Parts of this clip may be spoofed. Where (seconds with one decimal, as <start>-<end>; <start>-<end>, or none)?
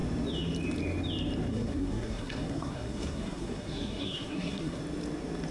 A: 1.5-4.8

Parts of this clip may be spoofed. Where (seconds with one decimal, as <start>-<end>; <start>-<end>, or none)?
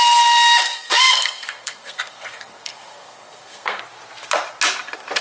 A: 0.7-3.8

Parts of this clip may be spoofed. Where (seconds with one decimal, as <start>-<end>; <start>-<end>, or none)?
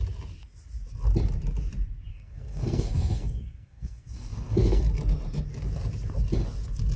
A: 2.1-4.8